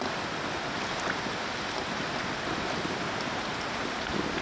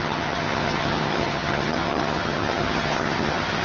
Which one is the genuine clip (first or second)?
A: first